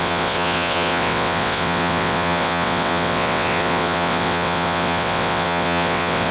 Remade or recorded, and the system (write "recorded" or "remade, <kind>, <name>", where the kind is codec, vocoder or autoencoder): remade, vocoder, WaveNeXt